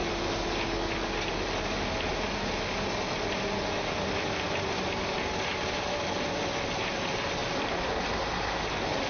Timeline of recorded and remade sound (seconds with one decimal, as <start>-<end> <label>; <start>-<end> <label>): 0.0-9.1 recorded